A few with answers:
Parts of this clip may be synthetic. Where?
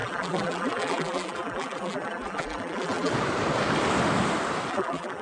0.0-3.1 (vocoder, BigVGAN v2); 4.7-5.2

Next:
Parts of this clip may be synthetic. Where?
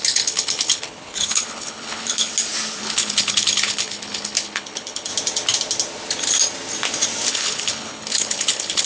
0.0-2.3 (codec, HILCodec); 2.8-5.1; 7.3-8.9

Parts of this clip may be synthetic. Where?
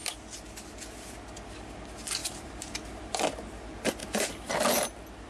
2.2-2.9 (vocoder, BigVGAN v2); 4.0-4.5